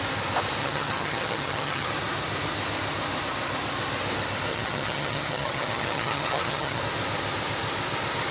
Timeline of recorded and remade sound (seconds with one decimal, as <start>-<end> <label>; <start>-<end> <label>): 0.0-0.6 recorded; 0.6-1.9 remade; 1.9-4.5 recorded; 4.5-6.8 remade; 6.8-8.3 recorded